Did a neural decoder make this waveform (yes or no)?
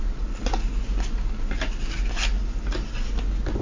no